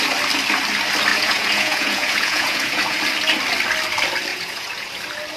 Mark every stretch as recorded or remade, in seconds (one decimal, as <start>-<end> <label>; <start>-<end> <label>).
0.0-1.1 recorded; 1.1-3.0 remade; 3.0-4.3 recorded; 4.3-4.9 remade; 4.9-5.4 recorded